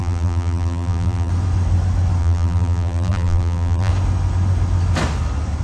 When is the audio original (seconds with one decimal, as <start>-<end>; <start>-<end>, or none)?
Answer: 1.3-2.2; 3.9-5.6